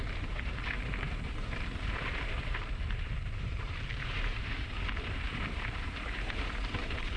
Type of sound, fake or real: fake